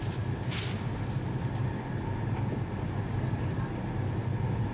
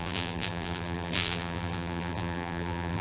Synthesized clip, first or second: second